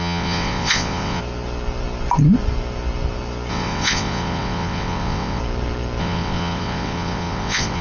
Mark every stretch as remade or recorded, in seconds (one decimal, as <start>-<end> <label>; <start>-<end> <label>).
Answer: 0.0-1.2 remade; 1.2-3.5 recorded; 3.5-5.4 remade; 5.4-6.0 recorded; 6.0-7.8 remade